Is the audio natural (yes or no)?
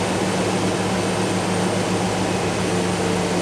yes